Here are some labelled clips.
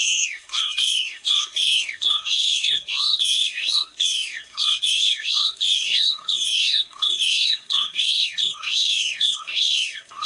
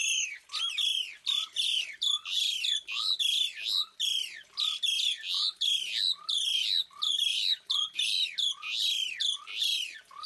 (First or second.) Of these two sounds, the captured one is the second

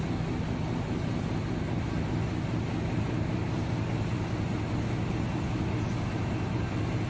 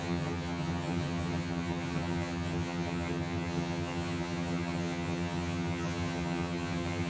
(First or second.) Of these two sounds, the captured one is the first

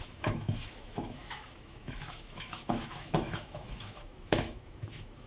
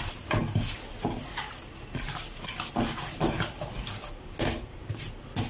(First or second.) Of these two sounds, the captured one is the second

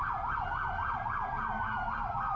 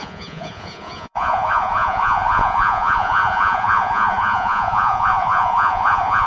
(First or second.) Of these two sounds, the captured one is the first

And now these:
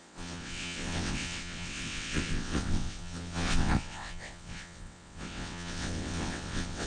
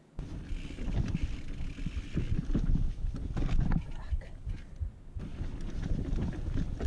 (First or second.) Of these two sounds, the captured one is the second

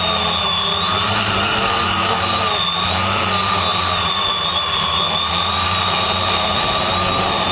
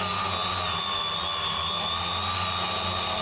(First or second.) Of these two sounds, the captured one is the second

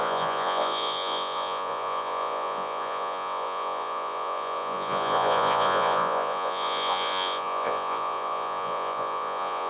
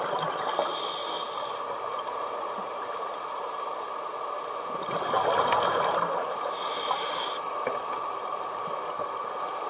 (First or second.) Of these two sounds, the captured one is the second